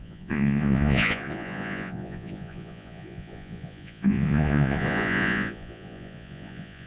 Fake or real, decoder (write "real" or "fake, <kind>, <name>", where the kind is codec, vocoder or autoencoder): fake, vocoder, Vocos